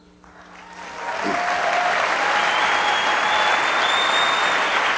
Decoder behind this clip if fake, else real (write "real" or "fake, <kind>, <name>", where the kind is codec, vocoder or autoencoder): real